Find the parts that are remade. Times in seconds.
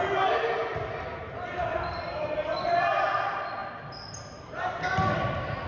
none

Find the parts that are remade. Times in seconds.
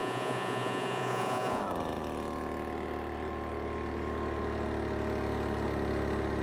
0.0-1.6 (vocoder, Vocos)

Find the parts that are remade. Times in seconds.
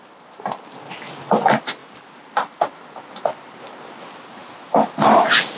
none